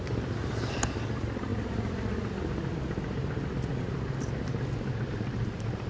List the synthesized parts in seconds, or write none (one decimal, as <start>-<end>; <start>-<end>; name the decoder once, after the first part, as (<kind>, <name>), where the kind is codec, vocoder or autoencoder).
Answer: none